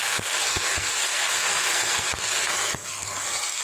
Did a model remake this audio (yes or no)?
yes